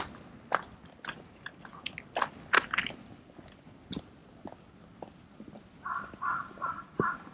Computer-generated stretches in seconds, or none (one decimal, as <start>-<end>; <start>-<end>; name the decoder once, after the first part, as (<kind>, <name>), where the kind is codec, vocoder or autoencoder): none